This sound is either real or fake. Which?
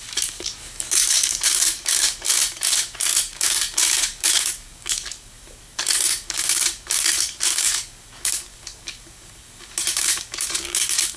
fake